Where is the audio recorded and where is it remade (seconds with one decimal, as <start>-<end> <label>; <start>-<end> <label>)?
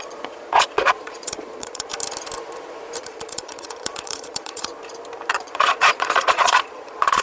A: 0.0-1.9 remade; 1.9-3.0 recorded; 3.0-4.7 remade; 4.7-5.3 recorded; 5.3-7.2 remade